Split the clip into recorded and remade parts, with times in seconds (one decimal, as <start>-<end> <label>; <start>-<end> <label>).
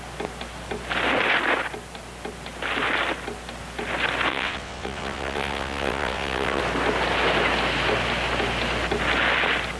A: 0.0-4.3 recorded; 4.3-6.6 remade; 6.6-9.8 recorded